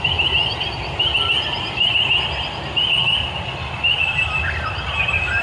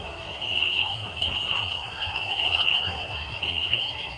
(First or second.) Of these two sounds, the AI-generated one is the second